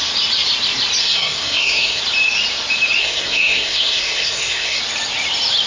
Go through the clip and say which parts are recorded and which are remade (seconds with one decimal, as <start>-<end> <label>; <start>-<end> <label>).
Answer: 0.0-1.0 recorded; 1.0-2.0 remade; 2.0-3.0 recorded; 3.0-4.8 remade; 4.8-5.7 recorded